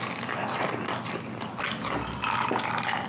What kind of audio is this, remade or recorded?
recorded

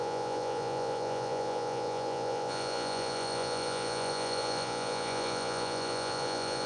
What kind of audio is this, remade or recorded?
remade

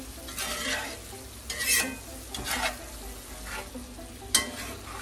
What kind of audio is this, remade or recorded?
recorded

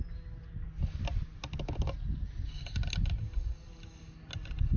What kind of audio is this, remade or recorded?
recorded